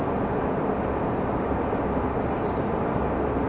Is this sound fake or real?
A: real